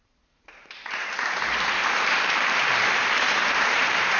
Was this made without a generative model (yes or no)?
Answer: no